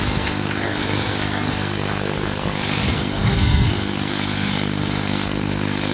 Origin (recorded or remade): remade